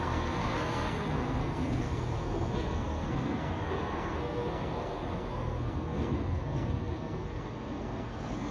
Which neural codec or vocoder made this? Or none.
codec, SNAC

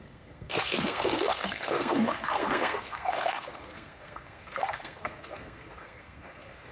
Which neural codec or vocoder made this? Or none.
codec, SNAC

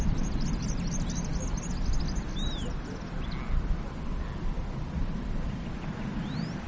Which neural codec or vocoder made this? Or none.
none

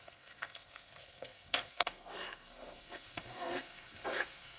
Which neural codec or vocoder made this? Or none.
codec, SNAC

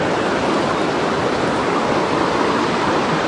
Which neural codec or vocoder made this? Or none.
none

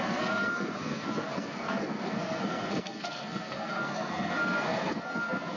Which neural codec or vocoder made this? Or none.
codec, SNAC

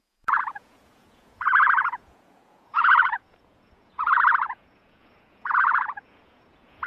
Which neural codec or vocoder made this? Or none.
vocoder, Vocos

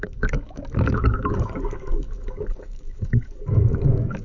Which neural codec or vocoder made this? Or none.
codec, DAC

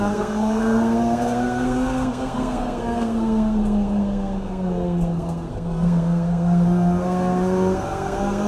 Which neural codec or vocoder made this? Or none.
codec, SNAC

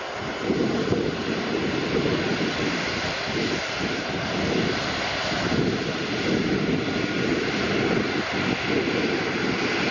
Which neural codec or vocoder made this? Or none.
none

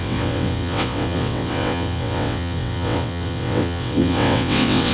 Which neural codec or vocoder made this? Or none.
vocoder, WaveNeXt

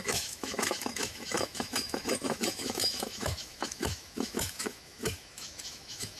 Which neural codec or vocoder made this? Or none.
autoencoder, DAC-VAE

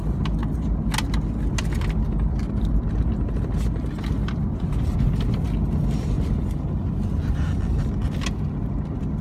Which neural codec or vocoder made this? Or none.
none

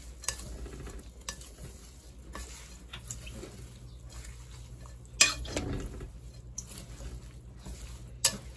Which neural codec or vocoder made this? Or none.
none